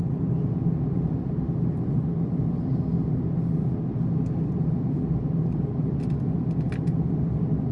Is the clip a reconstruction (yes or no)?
no